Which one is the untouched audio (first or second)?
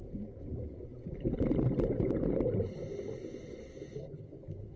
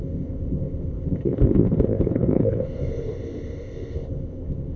first